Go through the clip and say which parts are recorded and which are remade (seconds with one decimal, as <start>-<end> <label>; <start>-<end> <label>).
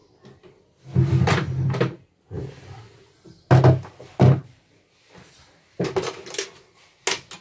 0.0-7.4 recorded